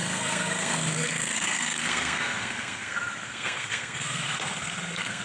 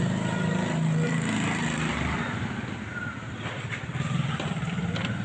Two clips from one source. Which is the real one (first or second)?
second